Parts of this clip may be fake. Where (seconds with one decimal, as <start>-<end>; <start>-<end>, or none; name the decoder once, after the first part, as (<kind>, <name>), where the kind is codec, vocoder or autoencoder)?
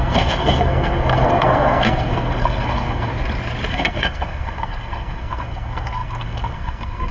0.0-3.1 (codec, SNAC); 3.7-7.1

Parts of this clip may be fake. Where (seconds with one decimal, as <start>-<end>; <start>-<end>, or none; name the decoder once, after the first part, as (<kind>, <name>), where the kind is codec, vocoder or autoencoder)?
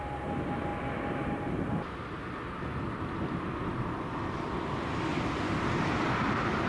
0.0-0.7 (vocoder, BigVGAN v2); 2.6-6.7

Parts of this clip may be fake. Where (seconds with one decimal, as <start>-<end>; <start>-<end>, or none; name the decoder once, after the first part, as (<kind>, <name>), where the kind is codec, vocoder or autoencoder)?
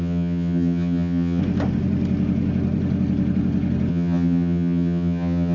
0.0-1.4 (vocoder, HiFi-GAN); 3.9-5.5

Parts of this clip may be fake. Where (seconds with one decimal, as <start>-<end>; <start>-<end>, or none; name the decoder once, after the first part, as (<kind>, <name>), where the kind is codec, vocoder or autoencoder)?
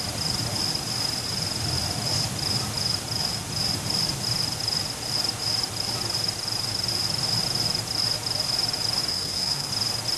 9.1-9.7 (codec, SNAC)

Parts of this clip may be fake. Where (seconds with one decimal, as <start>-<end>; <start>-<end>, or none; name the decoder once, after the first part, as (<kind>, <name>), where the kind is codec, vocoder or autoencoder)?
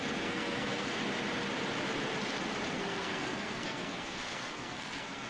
0.0-1.0 (codec, SNAC); 2.7-5.3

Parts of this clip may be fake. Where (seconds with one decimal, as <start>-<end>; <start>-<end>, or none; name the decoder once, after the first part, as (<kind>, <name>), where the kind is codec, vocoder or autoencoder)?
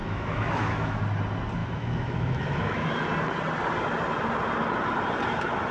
0.0-1.0 (autoencoder, DAC-VAE); 1.6-2.9